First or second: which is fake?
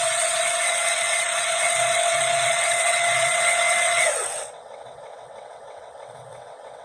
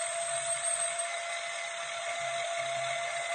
first